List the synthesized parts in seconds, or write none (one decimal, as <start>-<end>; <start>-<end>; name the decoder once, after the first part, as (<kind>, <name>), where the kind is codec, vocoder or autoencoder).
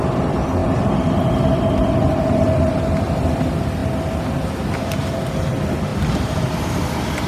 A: 5.9-7.3 (vocoder, BigVGAN v2)